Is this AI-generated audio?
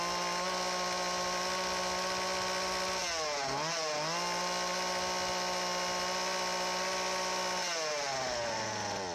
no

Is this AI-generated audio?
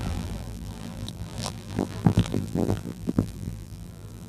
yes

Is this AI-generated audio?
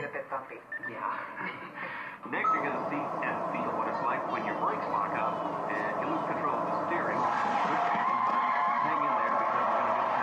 yes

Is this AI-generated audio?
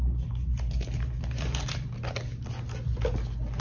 no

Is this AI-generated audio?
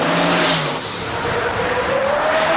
yes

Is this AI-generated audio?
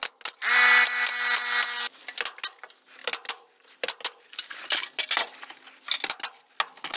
no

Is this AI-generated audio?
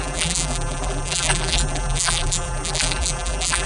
yes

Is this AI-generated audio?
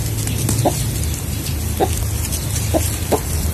no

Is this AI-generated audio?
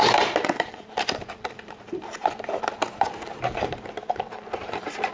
yes